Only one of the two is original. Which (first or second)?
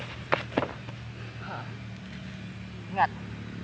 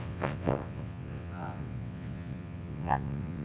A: first